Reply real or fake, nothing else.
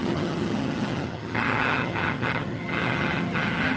fake